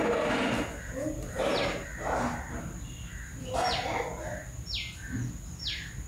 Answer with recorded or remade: recorded